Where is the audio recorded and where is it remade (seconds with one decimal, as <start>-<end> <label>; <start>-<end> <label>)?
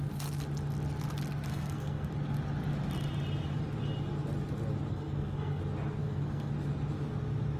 0.0-1.5 recorded; 1.5-2.1 remade; 2.1-4.9 recorded; 4.9-5.6 remade; 5.6-6.0 recorded; 6.0-6.5 remade; 6.5-7.6 recorded